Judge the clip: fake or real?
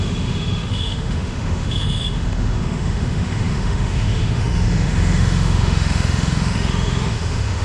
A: fake